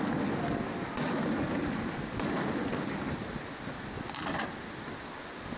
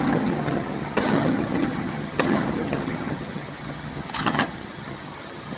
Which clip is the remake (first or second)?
second